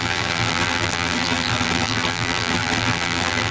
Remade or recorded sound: remade